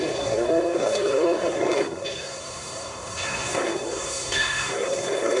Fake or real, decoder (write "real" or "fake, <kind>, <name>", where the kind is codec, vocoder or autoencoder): fake, codec, SNAC